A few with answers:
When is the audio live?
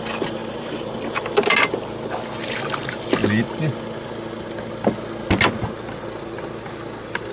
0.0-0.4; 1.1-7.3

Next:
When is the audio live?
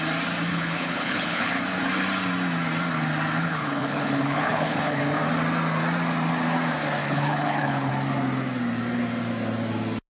0.0-0.5; 1.6-3.4; 5.0-7.0; 7.9-10.1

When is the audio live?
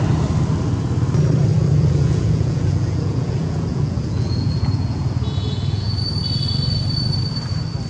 0.0-1.5; 6.0-7.9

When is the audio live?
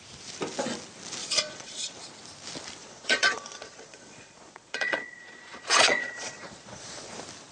0.0-1.2; 1.9-2.8; 7.1-7.5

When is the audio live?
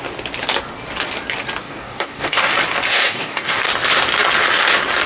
0.0-1.6; 2.5-2.9; 3.6-5.1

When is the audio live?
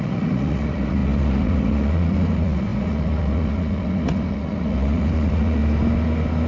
5.6-6.5